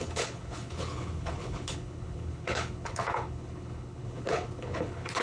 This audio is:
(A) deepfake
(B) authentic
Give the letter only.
A